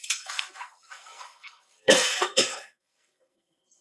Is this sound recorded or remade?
remade